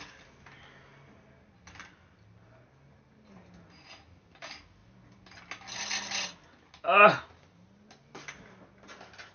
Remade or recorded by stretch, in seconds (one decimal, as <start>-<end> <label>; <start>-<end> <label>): 0.0-9.3 recorded